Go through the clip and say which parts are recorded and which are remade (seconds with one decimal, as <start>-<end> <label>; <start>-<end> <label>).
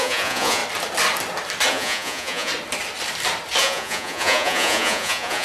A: 0.0-0.6 remade; 0.6-1.7 recorded; 1.7-2.5 remade; 2.5-3.6 recorded; 3.6-5.4 remade